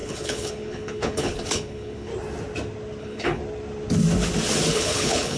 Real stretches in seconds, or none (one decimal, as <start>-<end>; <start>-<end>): 2.1-3.0; 3.4-4.7